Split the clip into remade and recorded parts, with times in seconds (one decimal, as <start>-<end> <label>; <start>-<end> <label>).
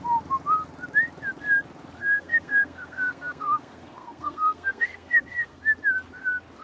0.0-2.0 recorded; 2.0-5.6 remade; 5.6-6.6 recorded